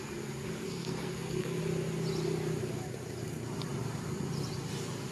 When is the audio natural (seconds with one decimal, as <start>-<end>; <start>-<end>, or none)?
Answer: 0.0-0.5; 1.6-5.1

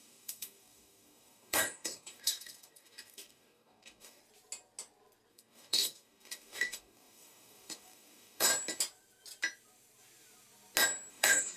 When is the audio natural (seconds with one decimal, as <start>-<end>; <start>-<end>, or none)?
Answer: 4.2-5.3; 8.5-11.1

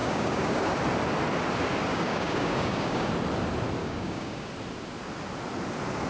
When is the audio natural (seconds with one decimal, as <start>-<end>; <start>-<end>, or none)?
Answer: 0.7-1.9; 3.1-3.8; 4.5-6.1

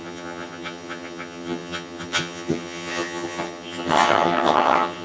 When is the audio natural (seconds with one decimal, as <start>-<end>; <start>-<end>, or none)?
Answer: none

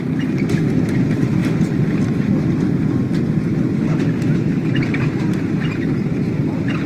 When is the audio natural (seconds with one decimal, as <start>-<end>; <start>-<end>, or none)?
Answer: 0.0-6.9